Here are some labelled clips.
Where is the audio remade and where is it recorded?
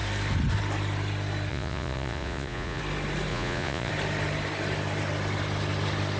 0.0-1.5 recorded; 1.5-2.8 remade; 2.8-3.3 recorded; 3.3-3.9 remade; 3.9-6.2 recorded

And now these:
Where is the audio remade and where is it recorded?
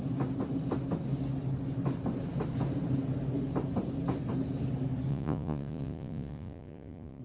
0.0-5.1 recorded; 5.1-7.2 remade